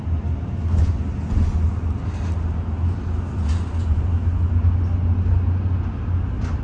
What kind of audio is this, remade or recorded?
recorded